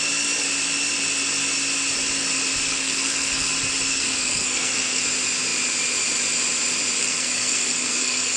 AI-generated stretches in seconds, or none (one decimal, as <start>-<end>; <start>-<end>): 2.7-3.5; 3.9-5.0; 7.0-8.4